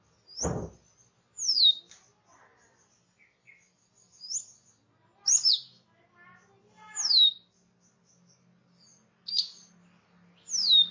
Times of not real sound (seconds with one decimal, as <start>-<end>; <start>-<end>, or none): none

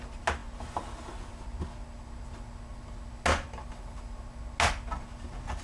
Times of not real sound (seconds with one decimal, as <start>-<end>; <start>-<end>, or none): none

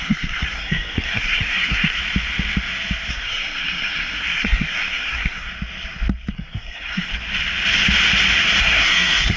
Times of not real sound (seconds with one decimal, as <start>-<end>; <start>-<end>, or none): 0.0-2.0; 3.1-5.5; 6.3-7.1; 8.6-9.4

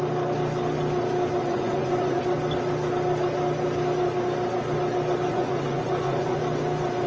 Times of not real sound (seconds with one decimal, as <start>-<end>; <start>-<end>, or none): 1.4-2.2; 5.3-6.4

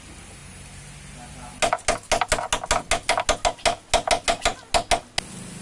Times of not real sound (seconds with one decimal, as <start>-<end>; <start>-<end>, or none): none

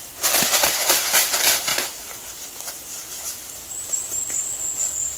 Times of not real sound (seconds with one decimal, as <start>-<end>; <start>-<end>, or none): none